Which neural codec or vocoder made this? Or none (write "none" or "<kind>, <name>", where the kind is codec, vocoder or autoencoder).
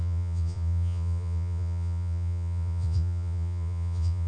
vocoder, Vocos